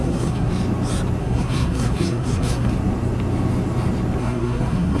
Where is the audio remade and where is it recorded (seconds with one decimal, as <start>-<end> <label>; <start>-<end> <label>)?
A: 0.0-0.5 remade; 0.5-1.2 recorded; 1.2-2.7 remade; 2.7-4.2 recorded; 4.2-5.0 remade